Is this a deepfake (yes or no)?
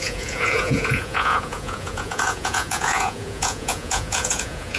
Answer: yes